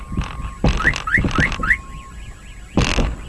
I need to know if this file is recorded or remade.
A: recorded